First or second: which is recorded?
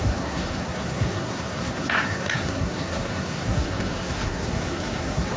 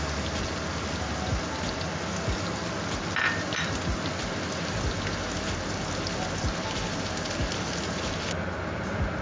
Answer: second